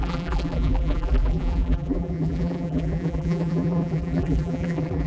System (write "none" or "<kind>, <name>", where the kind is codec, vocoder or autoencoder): vocoder, BigVGAN v2